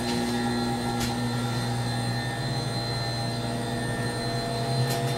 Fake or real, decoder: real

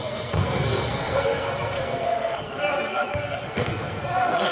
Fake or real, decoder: fake, codec, SNAC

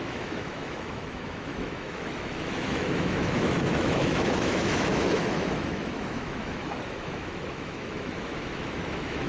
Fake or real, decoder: fake, autoencoder, DAC-VAE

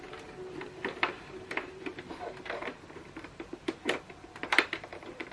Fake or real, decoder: fake, vocoder, BigVGAN v2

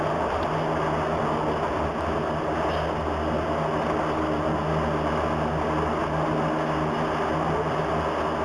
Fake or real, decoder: real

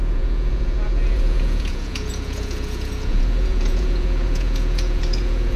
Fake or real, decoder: fake, vocoder, Vocos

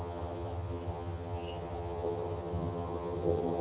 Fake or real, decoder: fake, vocoder, HiFi-GAN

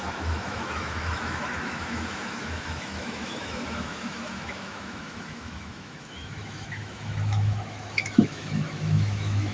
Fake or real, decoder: fake, autoencoder, DAC-VAE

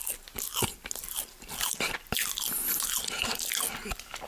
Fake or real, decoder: real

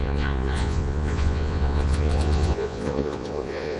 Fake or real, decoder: fake, vocoder, Vocos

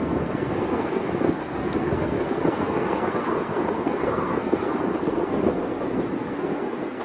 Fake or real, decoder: fake, codec, SNAC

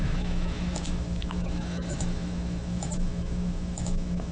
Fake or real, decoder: fake, autoencoder, DAC-VAE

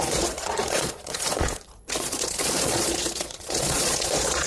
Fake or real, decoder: fake, vocoder, Vocos